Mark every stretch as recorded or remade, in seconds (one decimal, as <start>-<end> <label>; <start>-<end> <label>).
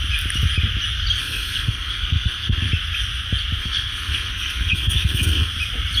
0.0-1.2 recorded; 1.2-2.7 remade; 2.7-3.6 recorded; 3.6-5.5 remade; 5.5-6.0 recorded